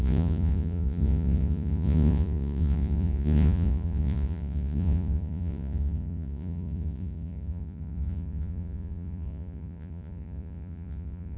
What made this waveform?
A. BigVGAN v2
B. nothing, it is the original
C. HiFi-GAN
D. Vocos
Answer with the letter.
D